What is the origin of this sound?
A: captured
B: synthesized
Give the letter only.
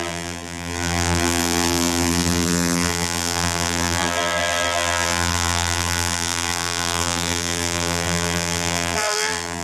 B